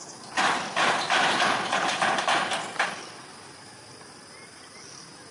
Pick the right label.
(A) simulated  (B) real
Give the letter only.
B